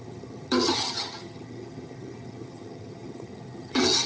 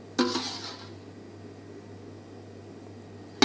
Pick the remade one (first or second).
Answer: first